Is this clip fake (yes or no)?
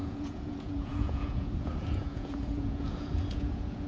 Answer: yes